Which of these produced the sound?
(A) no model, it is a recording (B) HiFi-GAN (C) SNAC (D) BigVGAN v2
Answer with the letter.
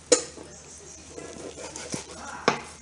A